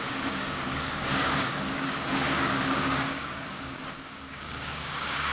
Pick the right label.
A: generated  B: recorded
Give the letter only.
A